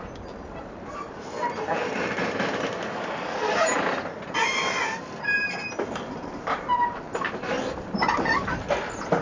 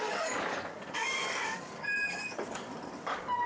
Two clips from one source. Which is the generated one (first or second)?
second